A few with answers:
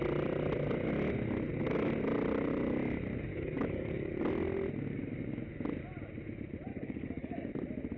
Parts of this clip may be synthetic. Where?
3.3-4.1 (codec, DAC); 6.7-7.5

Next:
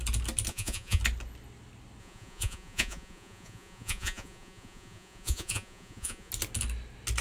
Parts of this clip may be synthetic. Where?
0.5-1.0 (vocoder, Vocos); 2.0-6.3

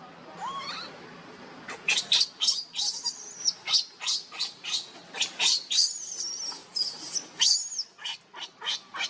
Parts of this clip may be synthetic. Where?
none

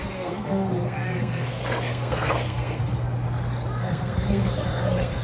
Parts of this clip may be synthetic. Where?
0.0-2.8 (codec, SNAC); 3.8-5.2

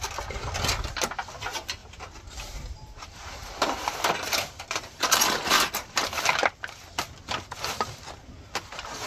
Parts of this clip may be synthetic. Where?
1.8-6.2 (vocoder, BigVGAN v2)

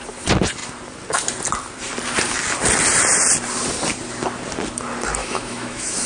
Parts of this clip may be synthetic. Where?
5.2-6.1 (autoencoder, DAC-VAE)